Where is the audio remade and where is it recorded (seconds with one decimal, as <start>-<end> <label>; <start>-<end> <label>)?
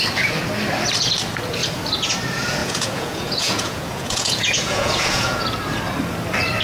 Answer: 0.0-2.6 recorded; 2.6-5.4 remade; 5.4-6.6 recorded